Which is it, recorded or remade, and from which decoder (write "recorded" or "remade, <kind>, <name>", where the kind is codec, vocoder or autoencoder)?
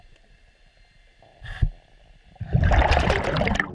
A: recorded